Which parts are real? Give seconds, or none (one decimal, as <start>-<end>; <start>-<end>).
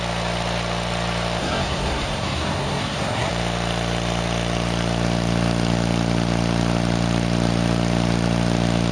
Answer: 0.0-1.4; 3.3-8.9